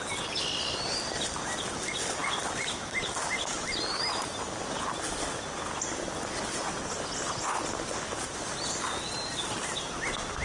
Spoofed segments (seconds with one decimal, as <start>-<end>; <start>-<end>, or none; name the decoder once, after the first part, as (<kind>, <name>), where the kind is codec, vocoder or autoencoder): none